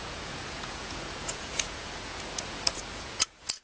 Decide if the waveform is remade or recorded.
remade